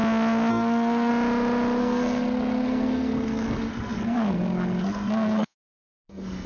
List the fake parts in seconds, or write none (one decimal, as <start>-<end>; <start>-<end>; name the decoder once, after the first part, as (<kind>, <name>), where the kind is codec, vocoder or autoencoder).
0.5-1.1 (codec, SNAC); 1.8-6.5